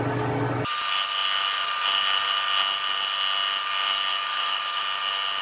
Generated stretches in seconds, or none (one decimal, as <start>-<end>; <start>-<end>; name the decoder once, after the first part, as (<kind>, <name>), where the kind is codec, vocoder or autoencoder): 4.1-4.8 (autoencoder, DAC-VAE)